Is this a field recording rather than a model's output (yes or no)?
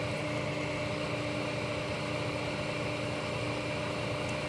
yes